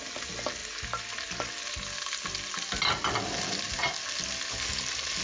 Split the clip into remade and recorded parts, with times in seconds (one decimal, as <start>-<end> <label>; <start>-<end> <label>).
0.0-5.2 recorded